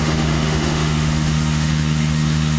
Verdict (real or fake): fake